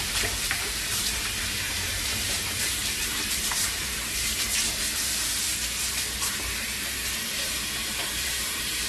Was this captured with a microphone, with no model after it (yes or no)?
no